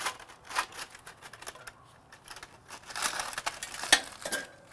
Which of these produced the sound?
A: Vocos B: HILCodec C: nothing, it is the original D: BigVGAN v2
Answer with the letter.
C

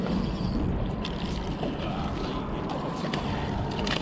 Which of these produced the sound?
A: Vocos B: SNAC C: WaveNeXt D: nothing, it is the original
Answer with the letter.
D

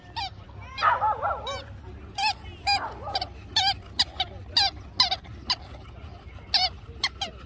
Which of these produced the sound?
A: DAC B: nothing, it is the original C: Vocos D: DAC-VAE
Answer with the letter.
B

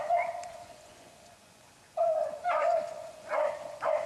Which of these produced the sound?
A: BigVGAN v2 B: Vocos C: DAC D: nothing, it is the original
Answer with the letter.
B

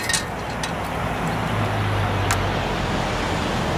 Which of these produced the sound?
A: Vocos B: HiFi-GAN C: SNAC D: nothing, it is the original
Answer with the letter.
D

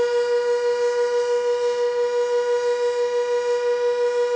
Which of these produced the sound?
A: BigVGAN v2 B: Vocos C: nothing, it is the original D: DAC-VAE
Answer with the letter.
C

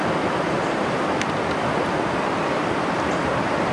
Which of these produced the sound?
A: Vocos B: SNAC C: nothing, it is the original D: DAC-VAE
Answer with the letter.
C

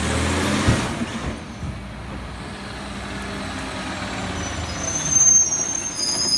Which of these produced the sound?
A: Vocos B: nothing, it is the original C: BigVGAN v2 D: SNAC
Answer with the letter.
B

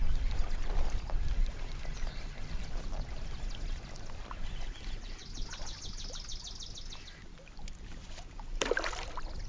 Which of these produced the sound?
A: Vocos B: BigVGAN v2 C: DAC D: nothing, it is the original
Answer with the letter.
D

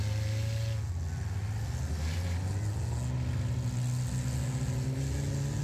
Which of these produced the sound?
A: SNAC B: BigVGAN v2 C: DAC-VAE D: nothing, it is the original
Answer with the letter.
D